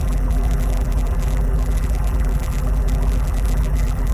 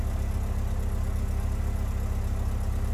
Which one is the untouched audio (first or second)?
second